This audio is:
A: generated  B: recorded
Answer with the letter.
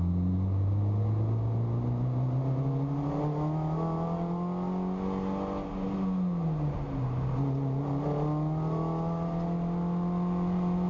B